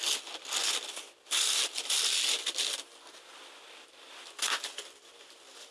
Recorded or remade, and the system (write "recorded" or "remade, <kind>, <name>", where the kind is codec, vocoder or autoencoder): recorded